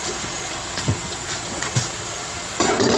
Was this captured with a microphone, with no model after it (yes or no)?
no